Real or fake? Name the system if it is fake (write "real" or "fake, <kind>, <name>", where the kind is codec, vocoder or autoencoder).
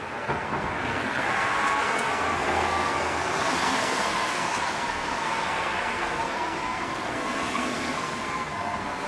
fake, codec, SNAC